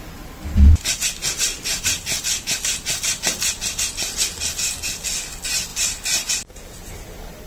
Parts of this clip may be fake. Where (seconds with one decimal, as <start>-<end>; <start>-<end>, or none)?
none